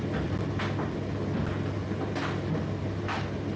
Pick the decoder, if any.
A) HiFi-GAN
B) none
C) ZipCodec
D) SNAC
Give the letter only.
B